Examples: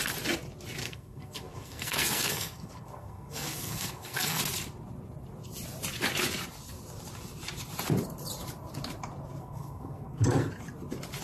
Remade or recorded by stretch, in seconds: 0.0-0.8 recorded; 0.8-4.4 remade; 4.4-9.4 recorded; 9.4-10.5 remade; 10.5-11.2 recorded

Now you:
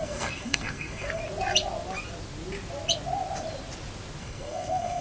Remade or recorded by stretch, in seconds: 0.0-1.2 remade; 1.2-4.2 recorded; 4.2-5.0 remade

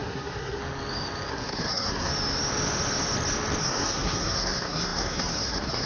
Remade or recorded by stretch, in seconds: 0.0-0.6 remade; 0.6-1.3 recorded; 1.3-2.1 remade; 2.1-3.6 recorded; 3.6-5.9 remade

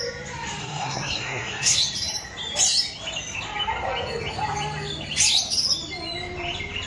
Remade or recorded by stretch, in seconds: 0.0-0.6 recorded; 0.6-1.8 remade; 1.8-6.9 recorded

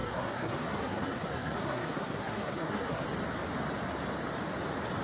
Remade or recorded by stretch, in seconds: 0.0-3.0 remade; 3.0-5.0 recorded